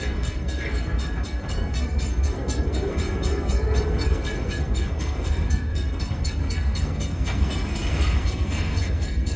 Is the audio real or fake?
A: fake